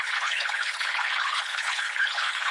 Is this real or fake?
fake